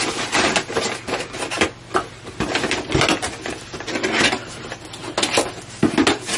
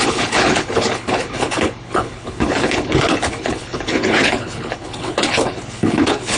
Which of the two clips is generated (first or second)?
second